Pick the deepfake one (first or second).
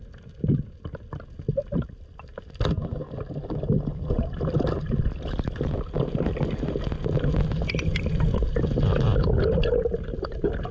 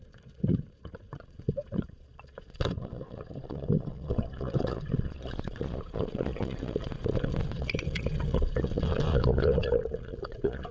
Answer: second